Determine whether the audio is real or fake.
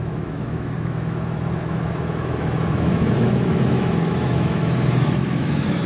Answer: fake